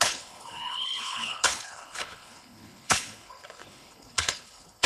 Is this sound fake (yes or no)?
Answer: yes